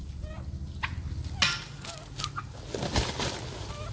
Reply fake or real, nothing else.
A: real